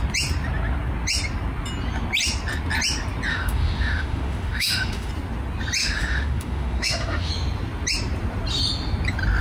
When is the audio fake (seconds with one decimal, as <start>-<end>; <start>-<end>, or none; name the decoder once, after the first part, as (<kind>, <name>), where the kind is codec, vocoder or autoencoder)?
3.3-5.1 (autoencoder, DAC-VAE); 5.8-7.3